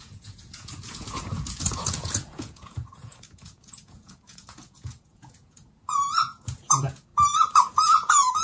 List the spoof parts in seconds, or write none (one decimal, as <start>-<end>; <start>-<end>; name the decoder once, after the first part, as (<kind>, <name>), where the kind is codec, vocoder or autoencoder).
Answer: 0.0-7.1 (vocoder, Vocos); 7.7-8.4